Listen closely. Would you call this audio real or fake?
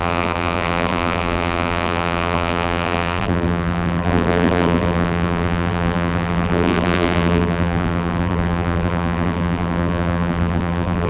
fake